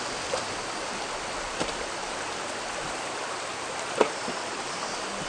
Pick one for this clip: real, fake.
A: real